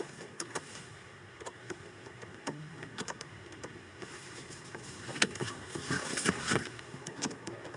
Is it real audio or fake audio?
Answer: fake